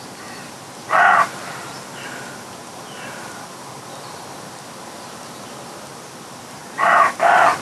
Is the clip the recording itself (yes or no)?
yes